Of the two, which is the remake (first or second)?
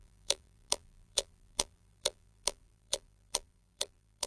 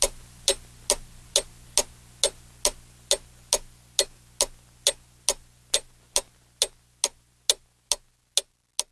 first